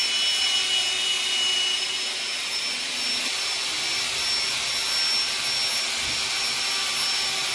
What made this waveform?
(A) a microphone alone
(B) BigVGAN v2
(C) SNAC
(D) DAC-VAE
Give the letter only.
A